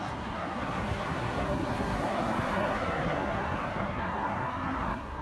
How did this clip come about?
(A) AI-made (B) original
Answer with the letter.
A